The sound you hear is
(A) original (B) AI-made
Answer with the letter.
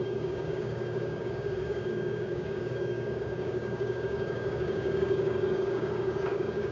B